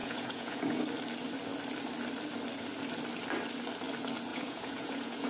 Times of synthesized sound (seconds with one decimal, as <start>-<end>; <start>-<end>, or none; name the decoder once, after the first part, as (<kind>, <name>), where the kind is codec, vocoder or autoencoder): 0.0-0.8 (vocoder, Vocos); 4.3-5.3